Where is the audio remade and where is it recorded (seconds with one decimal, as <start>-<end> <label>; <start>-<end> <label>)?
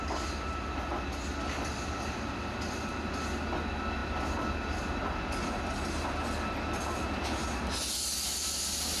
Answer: 0.0-9.0 recorded